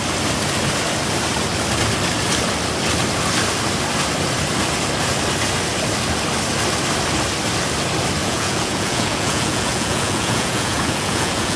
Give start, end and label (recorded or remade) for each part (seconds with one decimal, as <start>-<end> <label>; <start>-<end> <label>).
0.0-8.2 recorded; 8.2-11.6 remade